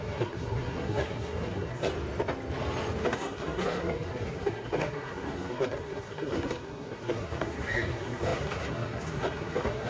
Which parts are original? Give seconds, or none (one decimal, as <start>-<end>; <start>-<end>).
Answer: 1.9-3.0